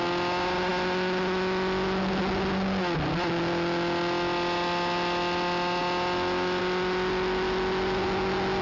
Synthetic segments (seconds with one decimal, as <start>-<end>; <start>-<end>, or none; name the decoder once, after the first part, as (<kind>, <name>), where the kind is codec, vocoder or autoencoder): none